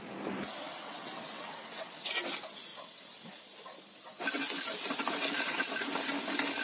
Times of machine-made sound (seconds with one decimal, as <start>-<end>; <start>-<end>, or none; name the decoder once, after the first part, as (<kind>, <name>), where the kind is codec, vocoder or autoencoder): 0.7-1.9 (vocoder, WaveNeXt)